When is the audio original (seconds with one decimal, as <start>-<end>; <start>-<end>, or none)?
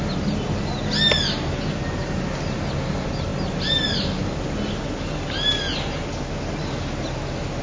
0.0-7.6